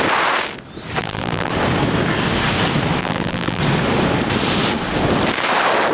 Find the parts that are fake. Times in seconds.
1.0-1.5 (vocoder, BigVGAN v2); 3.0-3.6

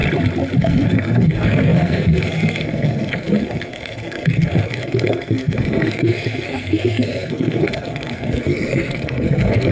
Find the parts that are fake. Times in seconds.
0.6-9.7 (codec, SNAC)

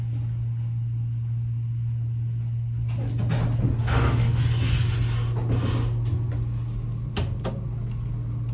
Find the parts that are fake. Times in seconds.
3.8-4.4 (autoencoder, DAC-VAE)

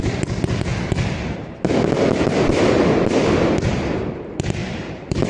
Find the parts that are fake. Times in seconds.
4.6-5.3 (vocoder, BigVGAN v2)

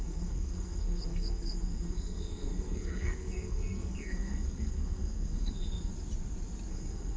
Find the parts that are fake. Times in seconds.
0.0-5.9 (codec, SNAC); 6.7-7.2

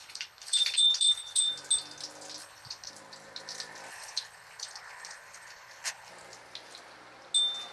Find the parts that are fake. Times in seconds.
0.0-1.5 (codec, HILCodec); 2.4-2.9; 3.9-6.1

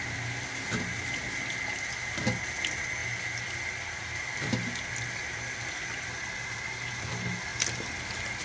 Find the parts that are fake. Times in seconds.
none

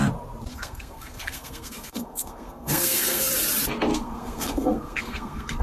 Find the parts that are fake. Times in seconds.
0.5-3.3 (codec, SNAC); 3.9-5.6